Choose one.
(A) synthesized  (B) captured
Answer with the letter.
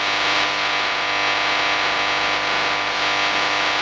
B